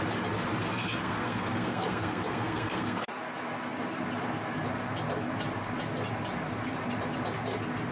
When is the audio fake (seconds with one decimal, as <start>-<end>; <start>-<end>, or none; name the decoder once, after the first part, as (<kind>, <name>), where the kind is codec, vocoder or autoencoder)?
1.0-3.1 (codec, SNAC)